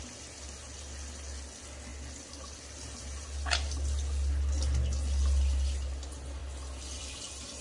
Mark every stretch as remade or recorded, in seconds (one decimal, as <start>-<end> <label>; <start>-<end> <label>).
0.0-7.6 recorded